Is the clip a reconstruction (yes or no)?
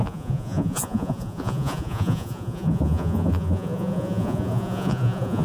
yes